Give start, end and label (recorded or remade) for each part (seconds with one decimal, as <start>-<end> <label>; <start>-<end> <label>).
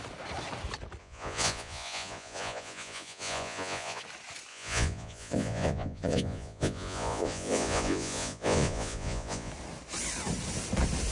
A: 0.0-1.0 recorded; 1.0-4.0 remade; 4.0-4.5 recorded; 4.5-9.5 remade; 9.5-11.1 recorded